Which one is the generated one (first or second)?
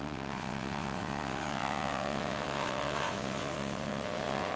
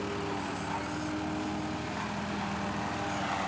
first